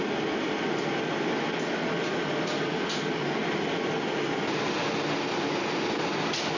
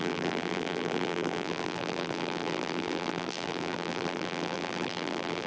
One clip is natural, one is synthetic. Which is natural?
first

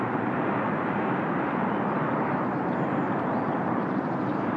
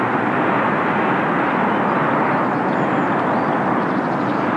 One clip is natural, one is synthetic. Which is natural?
second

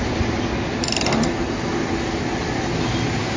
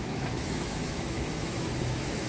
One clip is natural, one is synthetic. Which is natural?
first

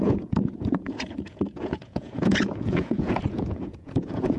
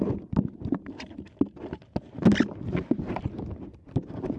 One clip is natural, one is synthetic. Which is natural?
second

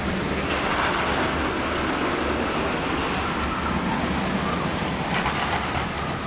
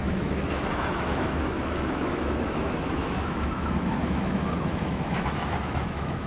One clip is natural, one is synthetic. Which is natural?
first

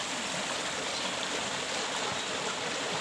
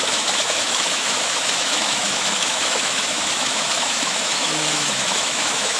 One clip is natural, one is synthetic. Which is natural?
first